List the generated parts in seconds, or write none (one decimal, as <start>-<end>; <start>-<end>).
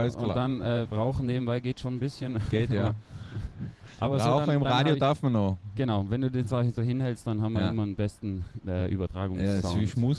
0.0-4.1; 8.8-10.2